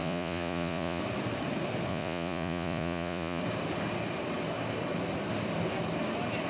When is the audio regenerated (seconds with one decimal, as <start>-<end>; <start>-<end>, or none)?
0.0-1.0; 1.9-3.4